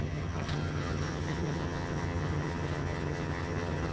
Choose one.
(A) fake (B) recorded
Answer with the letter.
A